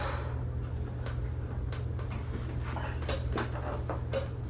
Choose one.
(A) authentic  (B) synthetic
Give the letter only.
A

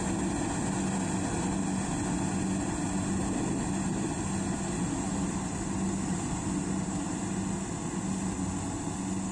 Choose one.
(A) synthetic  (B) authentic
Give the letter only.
B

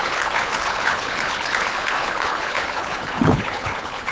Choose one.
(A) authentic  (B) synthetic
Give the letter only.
B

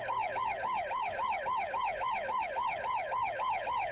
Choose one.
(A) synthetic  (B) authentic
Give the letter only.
A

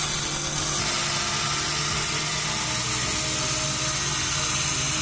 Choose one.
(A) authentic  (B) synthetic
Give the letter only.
A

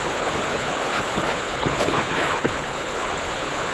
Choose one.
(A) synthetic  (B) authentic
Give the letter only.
A